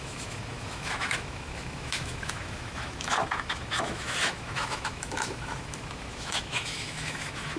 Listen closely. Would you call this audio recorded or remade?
remade